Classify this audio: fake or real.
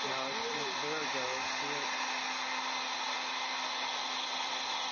real